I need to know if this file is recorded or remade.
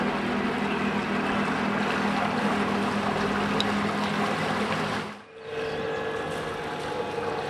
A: recorded